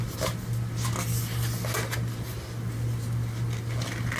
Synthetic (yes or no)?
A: no